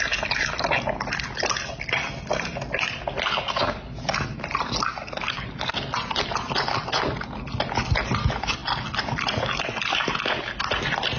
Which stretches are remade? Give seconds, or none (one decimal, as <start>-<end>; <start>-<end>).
none